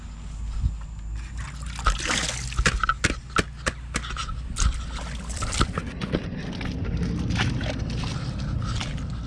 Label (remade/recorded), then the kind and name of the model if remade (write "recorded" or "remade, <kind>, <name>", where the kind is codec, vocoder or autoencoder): recorded